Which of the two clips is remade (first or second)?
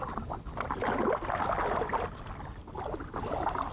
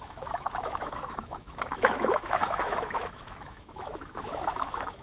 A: second